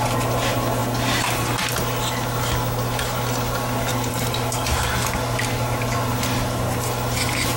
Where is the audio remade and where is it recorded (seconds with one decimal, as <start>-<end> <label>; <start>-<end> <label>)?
0.0-3.9 recorded; 3.9-4.9 remade; 4.9-7.6 recorded